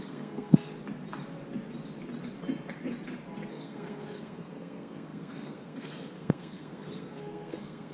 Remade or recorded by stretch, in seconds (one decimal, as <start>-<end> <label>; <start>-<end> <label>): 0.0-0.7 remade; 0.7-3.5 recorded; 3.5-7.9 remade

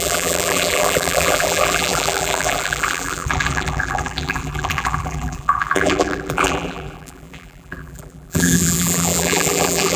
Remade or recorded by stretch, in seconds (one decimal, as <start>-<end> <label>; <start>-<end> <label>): 0.0-10.0 remade

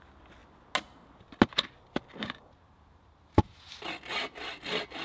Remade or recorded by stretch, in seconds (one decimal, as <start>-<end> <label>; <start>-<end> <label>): 0.0-5.0 recorded

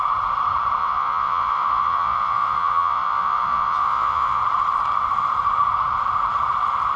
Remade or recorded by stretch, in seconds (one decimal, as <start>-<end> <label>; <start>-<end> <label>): 0.0-0.8 recorded; 0.8-4.4 remade; 4.4-7.0 recorded

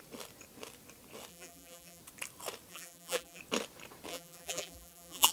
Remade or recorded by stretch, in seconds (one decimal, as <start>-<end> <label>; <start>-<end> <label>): 0.0-1.3 recorded; 1.3-2.0 remade; 2.0-2.7 recorded; 2.7-3.4 remade; 3.4-4.1 recorded; 4.1-5.3 remade

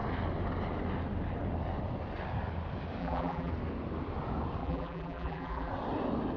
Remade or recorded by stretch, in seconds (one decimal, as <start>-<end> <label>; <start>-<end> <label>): 0.0-3.0 recorded; 3.0-3.5 remade; 3.5-4.6 recorded; 4.6-5.7 remade; 5.7-6.4 recorded